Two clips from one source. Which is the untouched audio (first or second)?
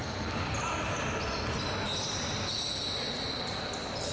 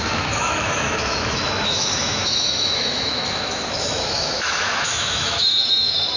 first